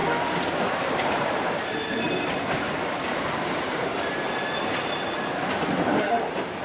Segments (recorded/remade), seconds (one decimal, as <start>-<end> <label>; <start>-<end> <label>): 0.0-0.5 recorded; 0.5-3.9 remade; 3.9-5.3 recorded; 5.3-6.6 remade